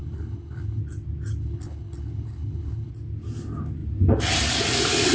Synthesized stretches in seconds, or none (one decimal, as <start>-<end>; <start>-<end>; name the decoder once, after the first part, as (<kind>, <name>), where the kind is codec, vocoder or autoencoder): 0.0-0.8 (codec, HILCodec); 1.4-2.9